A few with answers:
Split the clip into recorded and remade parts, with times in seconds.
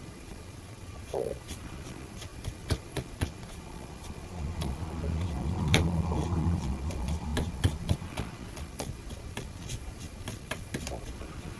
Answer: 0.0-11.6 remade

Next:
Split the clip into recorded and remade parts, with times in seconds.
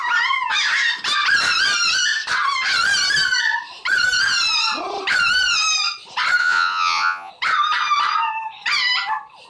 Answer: 0.0-6.4 recorded; 6.4-7.3 remade; 7.3-9.5 recorded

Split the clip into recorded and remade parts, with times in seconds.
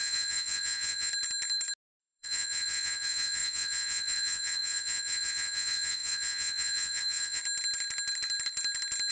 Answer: 0.0-1.1 remade; 1.1-2.0 recorded; 2.0-7.4 remade; 7.4-9.1 recorded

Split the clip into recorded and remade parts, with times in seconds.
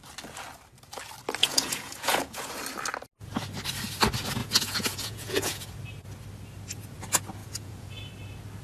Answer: 0.0-1.4 recorded; 1.4-2.4 remade; 2.4-4.4 recorded; 4.4-5.7 remade; 5.7-7.4 recorded; 7.4-8.0 remade; 8.0-8.6 recorded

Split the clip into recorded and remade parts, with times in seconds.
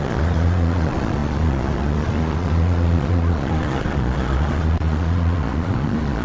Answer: 0.0-6.2 remade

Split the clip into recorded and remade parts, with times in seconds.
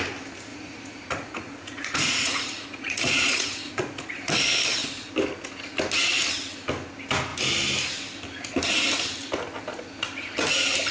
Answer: 0.0-0.5 recorded; 0.5-4.1 remade; 4.1-10.9 recorded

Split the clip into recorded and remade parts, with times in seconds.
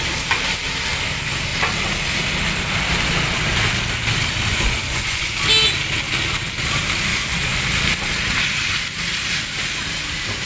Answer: 0.0-4.5 recorded; 4.5-5.3 remade; 5.3-7.1 recorded; 7.1-7.6 remade; 7.6-10.5 recorded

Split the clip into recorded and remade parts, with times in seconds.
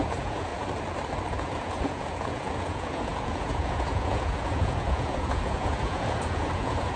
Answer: 0.0-0.5 remade; 0.5-1.3 recorded; 1.3-7.0 remade